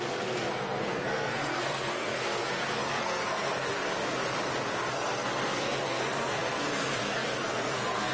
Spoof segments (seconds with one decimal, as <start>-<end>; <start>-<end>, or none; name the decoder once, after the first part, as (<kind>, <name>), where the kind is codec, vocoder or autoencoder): 0.0-3.8 (codec, SNAC); 4.9-8.1